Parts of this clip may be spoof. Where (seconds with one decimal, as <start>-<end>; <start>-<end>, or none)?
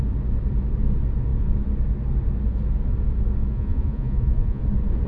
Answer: 3.5-4.6